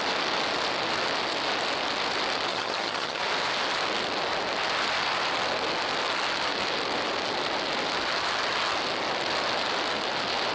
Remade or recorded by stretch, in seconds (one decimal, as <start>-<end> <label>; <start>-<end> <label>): 0.0-2.5 recorded; 2.5-3.2 remade; 3.2-10.5 recorded